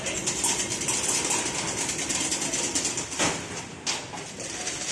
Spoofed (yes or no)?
no